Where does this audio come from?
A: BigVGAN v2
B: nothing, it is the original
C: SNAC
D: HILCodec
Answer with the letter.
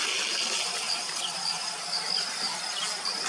B